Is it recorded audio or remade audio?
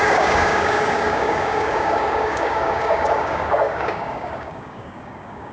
remade